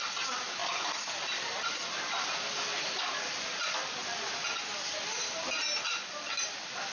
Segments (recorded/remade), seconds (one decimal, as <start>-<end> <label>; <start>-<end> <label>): 0.0-6.9 recorded